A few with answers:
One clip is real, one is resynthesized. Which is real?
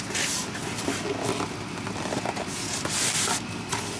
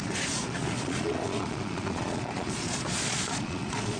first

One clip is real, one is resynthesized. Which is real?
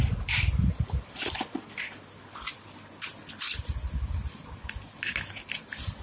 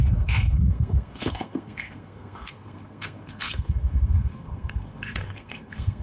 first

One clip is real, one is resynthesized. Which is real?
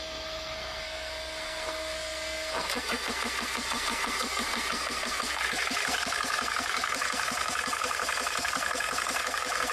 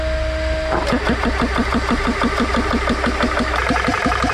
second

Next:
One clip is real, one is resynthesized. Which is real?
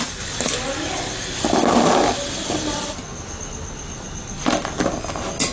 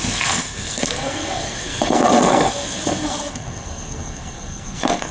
first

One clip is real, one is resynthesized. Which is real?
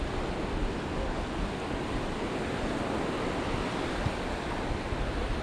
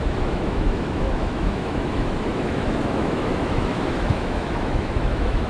first